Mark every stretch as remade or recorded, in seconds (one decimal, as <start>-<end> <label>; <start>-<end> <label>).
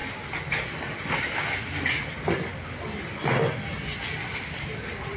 0.0-5.2 recorded